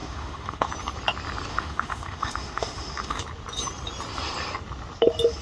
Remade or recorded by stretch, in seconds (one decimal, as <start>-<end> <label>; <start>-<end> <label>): 0.0-0.7 remade; 0.7-1.5 recorded; 1.5-3.2 remade; 3.2-5.4 recorded